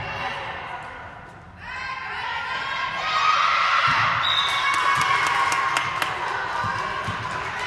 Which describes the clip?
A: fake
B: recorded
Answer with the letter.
B